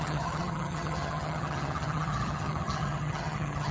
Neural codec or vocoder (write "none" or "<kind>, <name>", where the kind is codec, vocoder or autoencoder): vocoder, HiFi-GAN